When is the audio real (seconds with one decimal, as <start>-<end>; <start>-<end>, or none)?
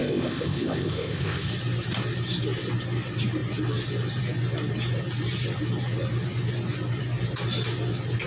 1.5-8.3